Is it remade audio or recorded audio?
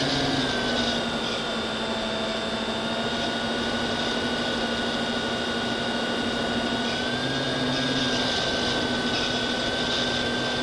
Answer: recorded